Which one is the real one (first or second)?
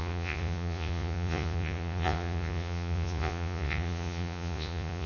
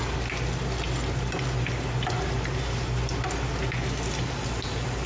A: second